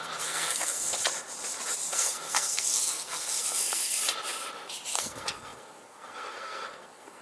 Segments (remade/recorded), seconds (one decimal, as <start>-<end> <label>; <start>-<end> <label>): 0.0-0.9 remade; 0.9-1.9 recorded; 1.9-4.0 remade; 4.0-4.9 recorded; 4.9-7.2 remade